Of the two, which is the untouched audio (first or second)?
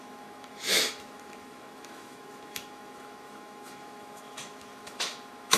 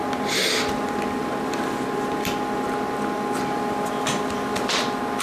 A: second